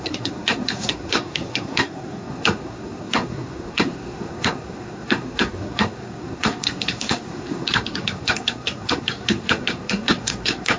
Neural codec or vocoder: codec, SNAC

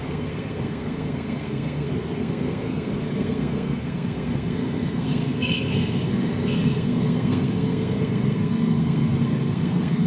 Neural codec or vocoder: codec, SNAC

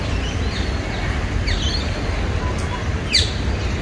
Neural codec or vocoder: none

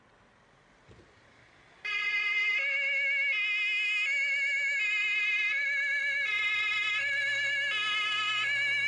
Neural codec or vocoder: none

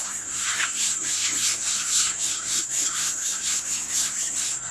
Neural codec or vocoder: codec, SNAC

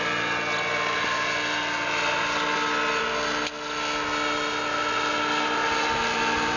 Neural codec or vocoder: none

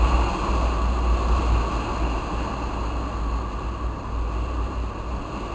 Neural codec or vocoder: none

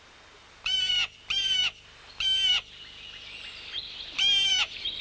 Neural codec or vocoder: none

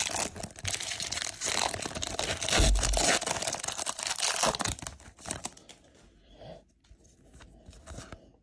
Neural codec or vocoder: none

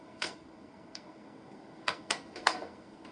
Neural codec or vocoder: codec, SNAC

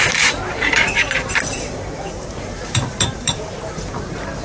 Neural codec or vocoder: vocoder, BigVGAN v2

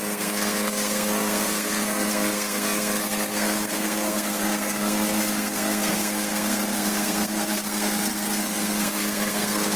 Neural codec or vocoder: codec, SNAC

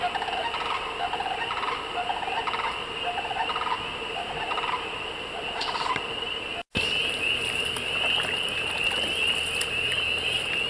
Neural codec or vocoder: none